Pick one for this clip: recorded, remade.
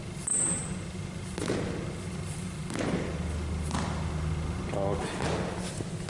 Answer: recorded